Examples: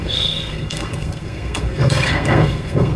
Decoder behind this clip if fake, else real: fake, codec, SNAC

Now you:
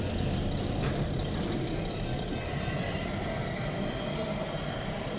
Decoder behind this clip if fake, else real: real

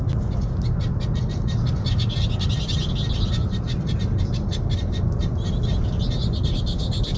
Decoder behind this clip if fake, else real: real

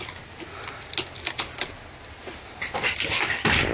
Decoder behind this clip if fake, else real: real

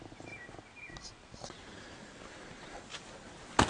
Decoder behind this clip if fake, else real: real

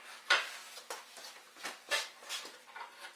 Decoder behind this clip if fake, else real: real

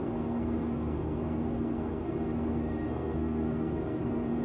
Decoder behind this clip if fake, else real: fake, codec, SNAC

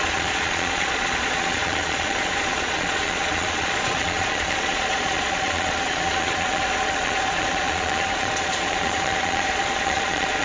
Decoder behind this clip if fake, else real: fake, vocoder, Vocos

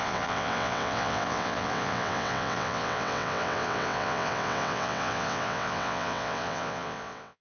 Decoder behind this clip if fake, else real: fake, vocoder, WaveNeXt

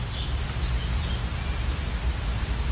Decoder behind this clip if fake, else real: real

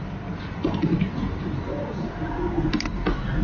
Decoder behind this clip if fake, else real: real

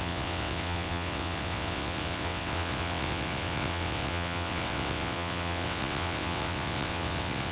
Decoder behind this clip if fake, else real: fake, vocoder, WaveNeXt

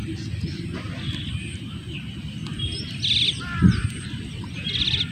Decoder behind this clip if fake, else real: real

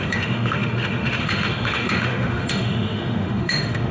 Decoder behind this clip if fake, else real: fake, autoencoder, DAC-VAE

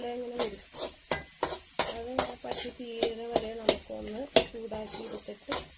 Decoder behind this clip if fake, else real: real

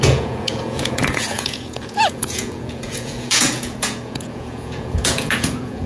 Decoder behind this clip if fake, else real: fake, vocoder, Vocos